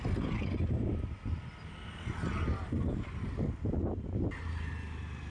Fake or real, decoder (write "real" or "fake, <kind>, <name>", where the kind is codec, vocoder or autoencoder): real